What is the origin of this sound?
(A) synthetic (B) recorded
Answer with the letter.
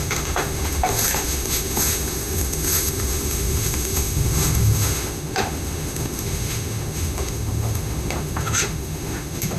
A